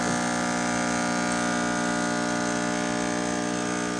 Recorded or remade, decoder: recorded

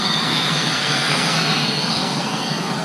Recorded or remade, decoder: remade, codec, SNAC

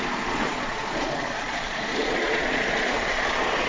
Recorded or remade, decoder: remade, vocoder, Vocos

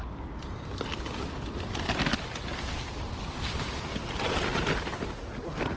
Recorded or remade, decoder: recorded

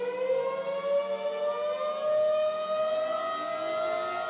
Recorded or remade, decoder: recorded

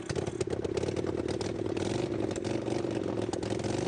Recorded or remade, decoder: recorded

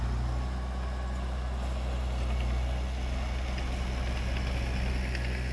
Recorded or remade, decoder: recorded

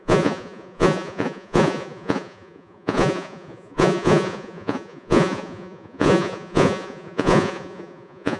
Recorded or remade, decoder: remade, vocoder, Vocos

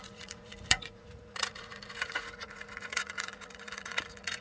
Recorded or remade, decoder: remade, vocoder, Vocos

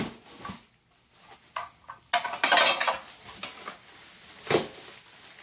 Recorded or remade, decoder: recorded